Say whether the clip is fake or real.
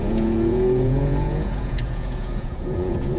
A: fake